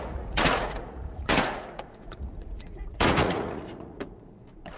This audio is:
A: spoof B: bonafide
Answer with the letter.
A